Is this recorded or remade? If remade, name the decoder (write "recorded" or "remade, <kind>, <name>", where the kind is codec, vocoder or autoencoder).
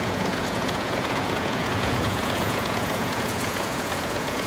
remade, vocoder, Vocos